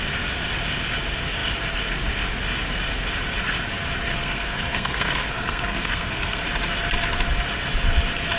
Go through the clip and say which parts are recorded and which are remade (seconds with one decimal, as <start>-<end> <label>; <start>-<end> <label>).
0.0-4.1 recorded; 4.1-6.4 remade; 6.4-8.4 recorded